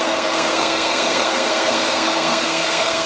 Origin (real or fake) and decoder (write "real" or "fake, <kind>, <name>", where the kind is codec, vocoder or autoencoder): fake, codec, SNAC